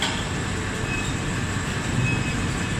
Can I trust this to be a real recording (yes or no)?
yes